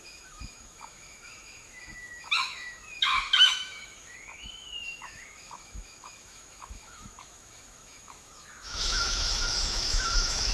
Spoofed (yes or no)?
yes